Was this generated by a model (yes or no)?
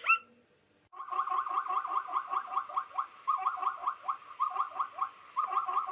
no